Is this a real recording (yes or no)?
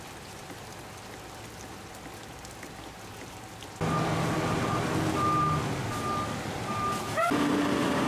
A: yes